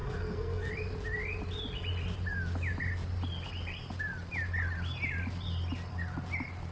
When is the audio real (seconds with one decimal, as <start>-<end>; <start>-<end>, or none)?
0.7-6.7